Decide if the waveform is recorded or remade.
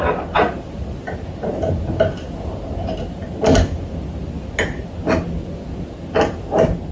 recorded